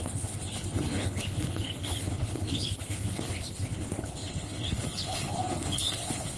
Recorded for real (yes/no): no